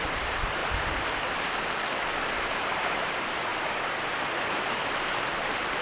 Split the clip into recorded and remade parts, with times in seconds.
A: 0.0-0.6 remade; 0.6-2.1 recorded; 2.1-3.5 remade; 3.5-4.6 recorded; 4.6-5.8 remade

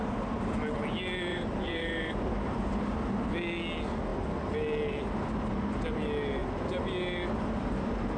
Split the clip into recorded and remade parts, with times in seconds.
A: 0.0-1.3 recorded; 1.3-2.6 remade; 2.6-8.2 recorded

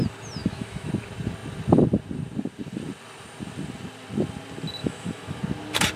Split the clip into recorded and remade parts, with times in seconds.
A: 0.0-0.4 recorded; 0.4-0.9 remade; 0.9-4.8 recorded; 4.8-5.4 remade; 5.4-6.0 recorded

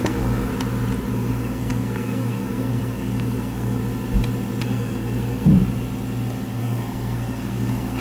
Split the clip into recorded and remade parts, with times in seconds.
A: 0.0-0.5 remade; 0.5-1.1 recorded; 1.1-3.8 remade; 3.8-4.6 recorded; 4.6-5.5 remade; 5.5-6.6 recorded; 6.6-8.0 remade

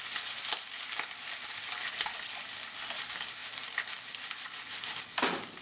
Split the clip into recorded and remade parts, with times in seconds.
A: 0.0-5.6 recorded

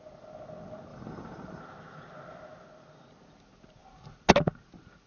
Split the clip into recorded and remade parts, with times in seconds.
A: 0.0-0.9 recorded; 0.9-1.6 remade; 1.6-5.1 recorded

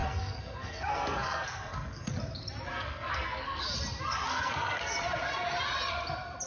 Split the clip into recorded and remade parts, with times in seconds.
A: 0.0-2.1 remade; 2.1-2.7 recorded; 2.7-3.6 remade; 3.6-4.3 recorded; 4.3-4.9 remade; 4.9-6.5 recorded